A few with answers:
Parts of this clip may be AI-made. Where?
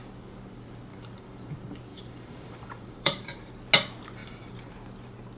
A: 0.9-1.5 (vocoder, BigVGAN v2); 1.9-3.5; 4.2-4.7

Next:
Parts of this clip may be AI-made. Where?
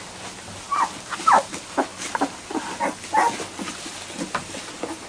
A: 0.7-1.4 (vocoder, BigVGAN v2); 1.9-3.1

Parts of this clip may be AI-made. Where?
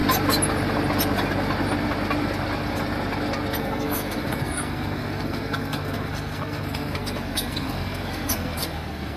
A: 3.6-9.2 (codec, SNAC)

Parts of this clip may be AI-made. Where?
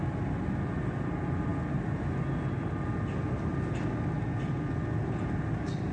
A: none